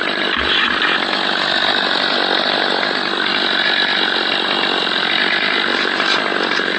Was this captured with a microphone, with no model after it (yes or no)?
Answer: yes